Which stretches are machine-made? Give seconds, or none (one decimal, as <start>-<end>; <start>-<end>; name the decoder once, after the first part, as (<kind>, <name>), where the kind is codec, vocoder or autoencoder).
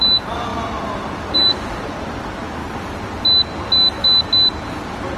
0.0-2.6 (vocoder, BigVGAN v2)